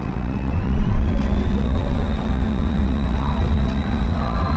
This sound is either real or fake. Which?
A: fake